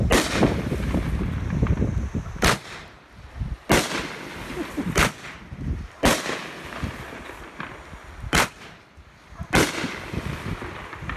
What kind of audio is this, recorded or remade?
recorded